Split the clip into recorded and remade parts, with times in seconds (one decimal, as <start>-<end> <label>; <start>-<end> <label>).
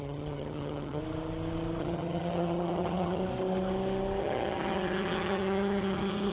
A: 0.0-1.0 remade; 1.0-1.8 recorded; 1.8-3.2 remade; 3.2-4.2 recorded; 4.2-6.3 remade